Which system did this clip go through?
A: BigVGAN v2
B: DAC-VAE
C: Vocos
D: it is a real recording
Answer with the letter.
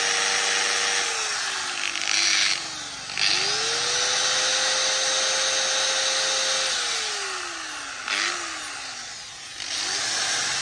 D